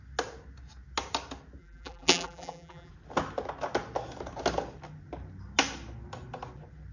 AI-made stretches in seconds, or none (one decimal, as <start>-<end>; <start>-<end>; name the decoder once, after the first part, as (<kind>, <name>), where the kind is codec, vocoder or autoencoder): 1.6-2.9 (vocoder, BigVGAN v2)